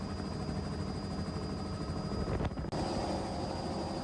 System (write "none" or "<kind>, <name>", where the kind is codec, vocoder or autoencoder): none